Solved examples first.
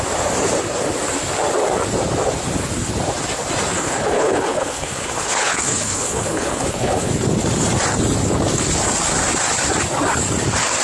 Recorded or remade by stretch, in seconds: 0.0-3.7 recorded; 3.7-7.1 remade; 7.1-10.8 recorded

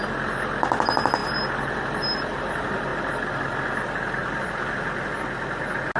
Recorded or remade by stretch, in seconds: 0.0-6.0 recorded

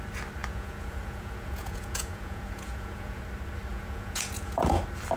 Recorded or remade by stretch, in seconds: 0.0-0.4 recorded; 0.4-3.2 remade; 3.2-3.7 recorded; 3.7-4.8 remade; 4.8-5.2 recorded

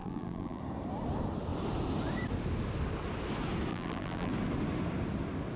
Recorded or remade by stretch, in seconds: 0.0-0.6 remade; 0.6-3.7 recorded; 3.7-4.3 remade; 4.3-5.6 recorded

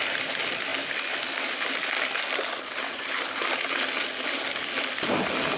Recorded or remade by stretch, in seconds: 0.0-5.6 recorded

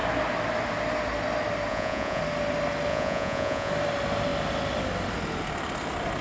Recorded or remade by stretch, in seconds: 0.0-1.7 recorded; 1.7-2.2 remade; 2.2-2.9 recorded; 2.9-3.7 remade; 3.7-6.2 recorded